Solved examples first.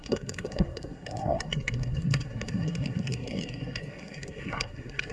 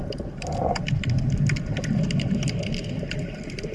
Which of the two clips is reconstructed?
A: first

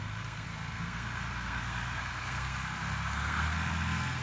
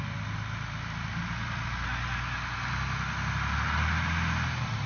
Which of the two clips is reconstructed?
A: first